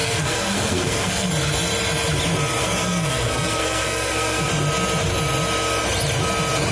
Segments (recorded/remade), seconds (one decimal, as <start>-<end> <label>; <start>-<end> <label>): 0.0-1.3 remade; 1.3-2.6 recorded; 2.6-4.5 remade; 4.5-6.7 recorded